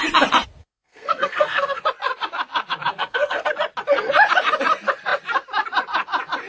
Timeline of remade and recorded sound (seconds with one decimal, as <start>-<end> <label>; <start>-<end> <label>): 0.0-0.6 recorded; 0.6-1.8 remade; 1.8-2.9 recorded; 2.9-3.5 remade; 3.5-6.5 recorded